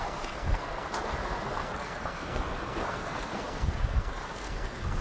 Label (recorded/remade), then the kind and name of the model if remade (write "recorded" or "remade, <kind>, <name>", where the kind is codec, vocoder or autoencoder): remade, codec, SNAC